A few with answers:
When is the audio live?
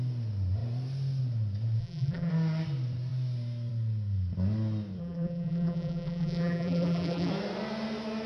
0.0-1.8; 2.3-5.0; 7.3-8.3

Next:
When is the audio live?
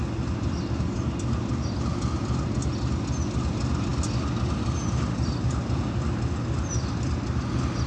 0.0-7.9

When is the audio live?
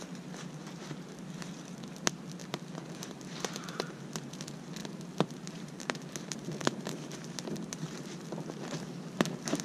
0.0-2.4; 4.0-4.8; 7.7-9.6